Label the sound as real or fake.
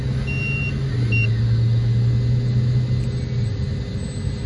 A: real